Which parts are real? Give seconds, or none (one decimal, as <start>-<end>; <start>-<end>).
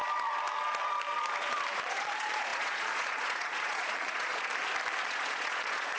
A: 0.0-1.8; 4.5-5.0